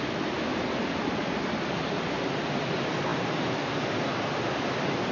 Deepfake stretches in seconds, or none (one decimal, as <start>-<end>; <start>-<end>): none